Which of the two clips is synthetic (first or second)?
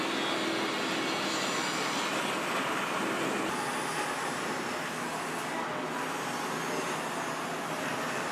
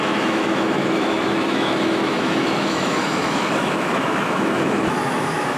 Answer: second